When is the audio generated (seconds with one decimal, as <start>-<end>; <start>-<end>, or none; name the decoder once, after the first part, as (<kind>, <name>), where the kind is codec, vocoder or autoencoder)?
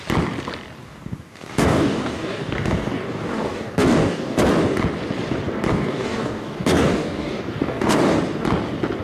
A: 0.8-4.4 (codec, DAC); 5.7-8.2